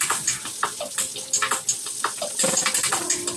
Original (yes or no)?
yes